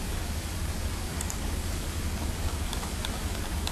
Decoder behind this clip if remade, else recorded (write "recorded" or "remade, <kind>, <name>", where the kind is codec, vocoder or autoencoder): remade, codec, DAC